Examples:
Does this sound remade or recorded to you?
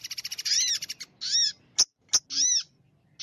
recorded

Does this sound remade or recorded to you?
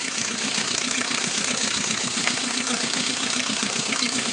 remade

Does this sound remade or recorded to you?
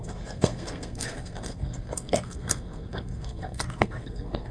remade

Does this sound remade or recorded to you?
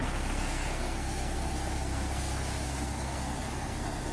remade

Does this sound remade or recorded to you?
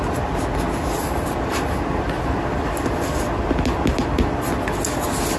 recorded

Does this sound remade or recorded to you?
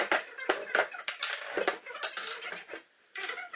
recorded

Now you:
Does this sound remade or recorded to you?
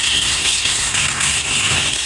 remade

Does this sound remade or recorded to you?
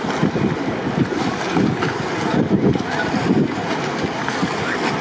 recorded